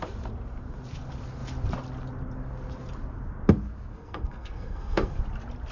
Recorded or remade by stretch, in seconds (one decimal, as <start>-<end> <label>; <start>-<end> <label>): 0.0-3.9 recorded; 3.9-5.2 remade; 5.2-5.7 recorded